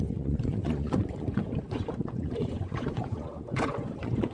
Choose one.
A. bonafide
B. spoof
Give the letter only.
B